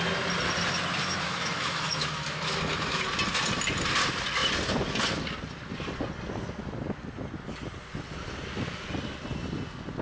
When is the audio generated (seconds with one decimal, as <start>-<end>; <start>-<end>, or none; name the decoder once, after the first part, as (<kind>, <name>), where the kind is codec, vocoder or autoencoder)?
1.0-3.0 (autoencoder, DAC-VAE)